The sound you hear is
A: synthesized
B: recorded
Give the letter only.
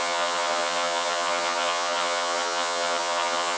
A